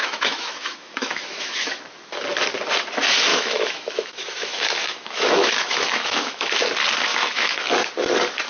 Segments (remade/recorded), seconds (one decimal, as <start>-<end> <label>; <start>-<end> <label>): 0.0-1.8 remade; 1.8-3.3 recorded; 3.3-6.6 remade; 6.6-7.1 recorded; 7.1-7.7 remade; 7.7-8.5 recorded